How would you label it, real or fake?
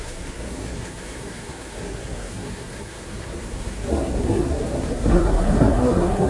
fake